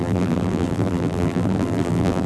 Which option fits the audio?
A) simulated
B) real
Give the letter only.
A